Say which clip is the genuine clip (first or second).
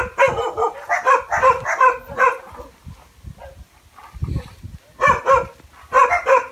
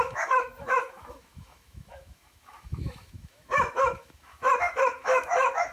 first